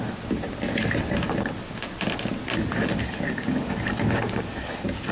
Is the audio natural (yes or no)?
yes